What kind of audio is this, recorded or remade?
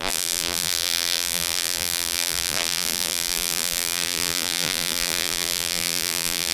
remade